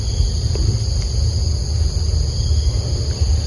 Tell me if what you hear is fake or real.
real